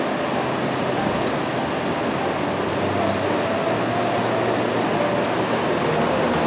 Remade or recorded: recorded